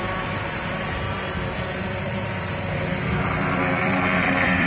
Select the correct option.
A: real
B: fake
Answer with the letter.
B